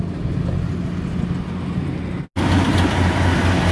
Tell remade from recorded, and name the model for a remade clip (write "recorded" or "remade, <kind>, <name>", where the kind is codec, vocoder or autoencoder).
recorded